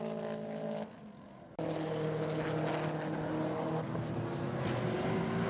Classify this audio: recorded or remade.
recorded